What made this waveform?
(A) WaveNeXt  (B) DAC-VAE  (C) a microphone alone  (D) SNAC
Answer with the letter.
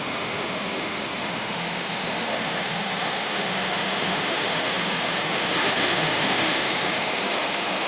B